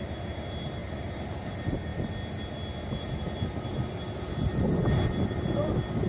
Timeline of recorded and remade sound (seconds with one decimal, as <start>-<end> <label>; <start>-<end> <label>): 0.0-0.8 recorded; 0.8-1.5 remade; 1.5-6.1 recorded